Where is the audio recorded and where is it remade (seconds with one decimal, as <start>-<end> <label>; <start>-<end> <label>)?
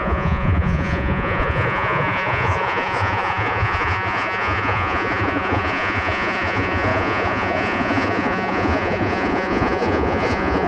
0.0-10.7 remade